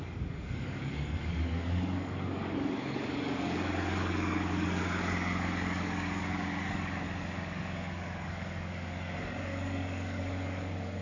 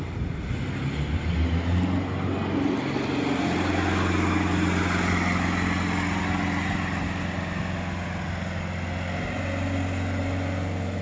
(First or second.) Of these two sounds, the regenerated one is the first